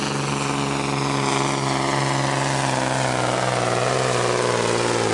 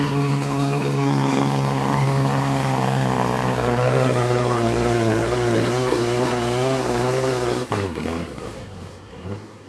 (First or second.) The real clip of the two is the first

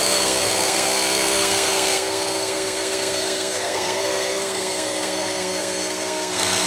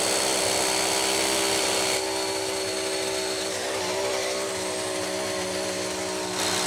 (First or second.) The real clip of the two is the second